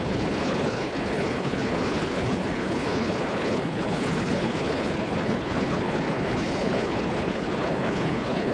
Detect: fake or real fake